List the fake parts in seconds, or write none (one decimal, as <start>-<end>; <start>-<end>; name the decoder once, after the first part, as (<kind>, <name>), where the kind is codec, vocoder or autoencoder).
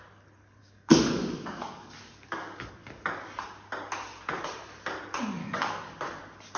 0.6-2.7 (codec, DAC); 5.4-5.9